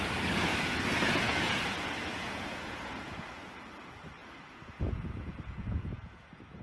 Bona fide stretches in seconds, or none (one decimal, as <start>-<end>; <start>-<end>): 0.0-0.5; 1.7-2.1; 3.5-4.2